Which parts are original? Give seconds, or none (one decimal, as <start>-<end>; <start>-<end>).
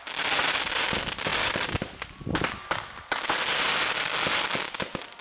0.0-5.2